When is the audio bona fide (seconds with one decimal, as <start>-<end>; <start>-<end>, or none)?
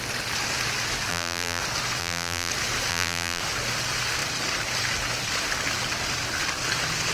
0.0-1.1; 1.6-2.0; 2.5-2.9; 3.4-7.1